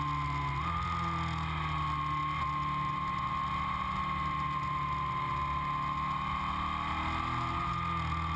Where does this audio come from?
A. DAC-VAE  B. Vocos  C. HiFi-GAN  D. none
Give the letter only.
D